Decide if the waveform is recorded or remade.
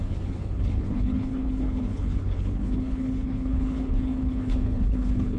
remade